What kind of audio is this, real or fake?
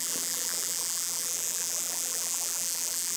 fake